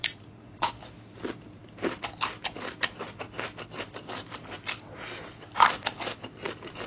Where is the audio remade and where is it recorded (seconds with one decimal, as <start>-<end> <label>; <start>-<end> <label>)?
0.0-0.7 remade; 0.7-6.9 recorded